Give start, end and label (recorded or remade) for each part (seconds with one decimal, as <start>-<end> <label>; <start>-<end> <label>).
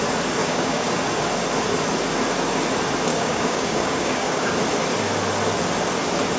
0.0-0.4 recorded; 0.4-0.9 remade; 0.9-3.1 recorded; 3.1-4.5 remade; 4.5-6.4 recorded